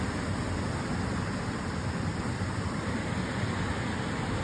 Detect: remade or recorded recorded